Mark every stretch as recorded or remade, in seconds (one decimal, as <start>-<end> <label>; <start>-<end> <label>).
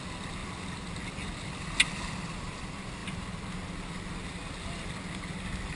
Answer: 0.0-5.8 recorded